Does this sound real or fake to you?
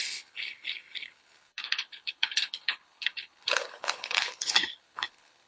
fake